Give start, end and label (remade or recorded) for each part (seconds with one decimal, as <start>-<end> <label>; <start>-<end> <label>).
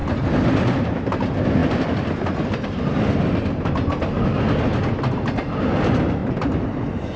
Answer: 0.0-1.2 remade; 1.2-6.2 recorded; 6.2-6.8 remade; 6.8-7.2 recorded